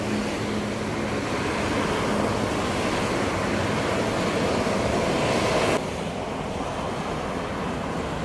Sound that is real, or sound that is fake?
real